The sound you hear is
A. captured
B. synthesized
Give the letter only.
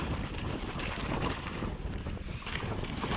B